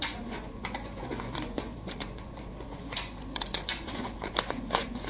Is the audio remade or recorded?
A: remade